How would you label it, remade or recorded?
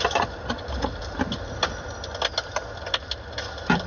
recorded